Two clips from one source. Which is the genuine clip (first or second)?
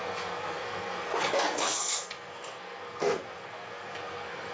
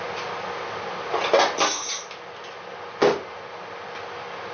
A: second